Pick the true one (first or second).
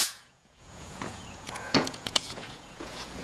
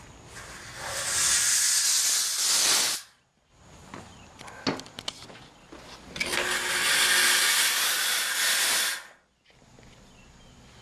second